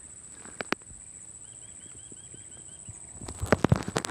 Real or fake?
real